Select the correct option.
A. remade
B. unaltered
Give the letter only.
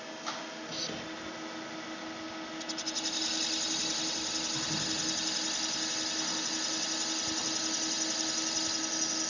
B